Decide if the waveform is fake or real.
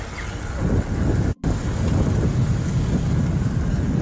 real